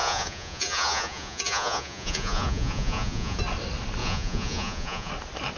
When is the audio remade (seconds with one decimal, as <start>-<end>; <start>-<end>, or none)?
0.0-3.4; 4.0-5.1